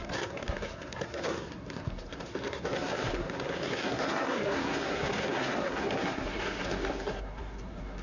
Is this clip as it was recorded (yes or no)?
no